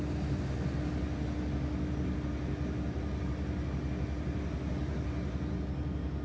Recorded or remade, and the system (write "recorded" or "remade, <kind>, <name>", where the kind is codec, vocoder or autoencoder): recorded